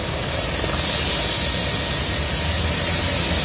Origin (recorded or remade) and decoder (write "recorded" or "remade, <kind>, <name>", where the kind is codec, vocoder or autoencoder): recorded